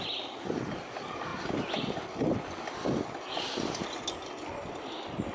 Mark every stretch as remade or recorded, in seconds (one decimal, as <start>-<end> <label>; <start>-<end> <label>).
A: 0.0-5.3 recorded